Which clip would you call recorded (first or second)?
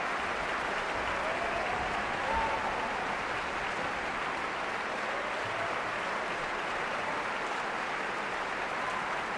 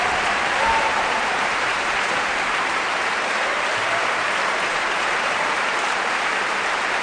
first